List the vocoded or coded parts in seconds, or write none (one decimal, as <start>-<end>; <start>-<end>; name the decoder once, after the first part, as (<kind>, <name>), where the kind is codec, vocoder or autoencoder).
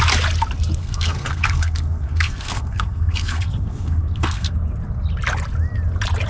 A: 0.8-4.5 (codec, SNAC)